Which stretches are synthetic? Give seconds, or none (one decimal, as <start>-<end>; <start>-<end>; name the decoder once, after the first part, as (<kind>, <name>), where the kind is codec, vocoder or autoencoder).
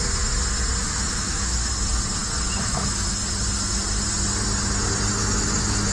0.8-1.6 (autoencoder, DAC-VAE); 2.6-3.2; 5.1-5.9